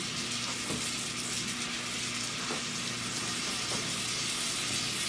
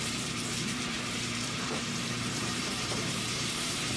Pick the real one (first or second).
first